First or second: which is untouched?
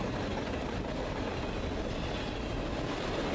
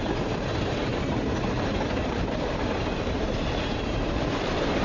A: first